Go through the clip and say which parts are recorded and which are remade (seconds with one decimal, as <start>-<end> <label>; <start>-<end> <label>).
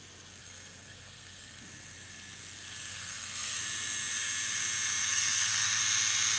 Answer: 0.0-0.4 recorded; 0.4-1.6 remade; 1.6-2.9 recorded; 2.9-3.6 remade; 3.6-5.0 recorded; 5.0-5.8 remade; 5.8-6.4 recorded